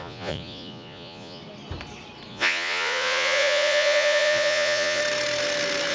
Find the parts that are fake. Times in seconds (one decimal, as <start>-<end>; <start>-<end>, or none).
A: 0.0-1.4; 2.3-5.0